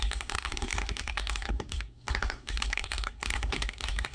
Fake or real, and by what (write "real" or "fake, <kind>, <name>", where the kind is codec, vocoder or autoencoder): fake, codec, SNAC